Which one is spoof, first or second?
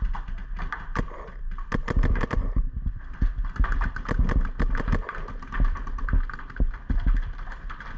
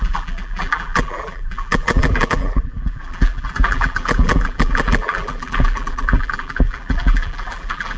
second